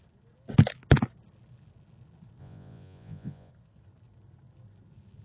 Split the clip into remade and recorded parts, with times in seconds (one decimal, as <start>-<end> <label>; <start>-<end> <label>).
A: 0.0-2.4 recorded; 2.4-3.5 remade; 3.5-5.2 recorded